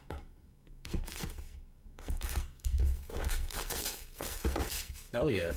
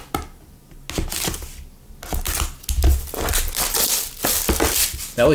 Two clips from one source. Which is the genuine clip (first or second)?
second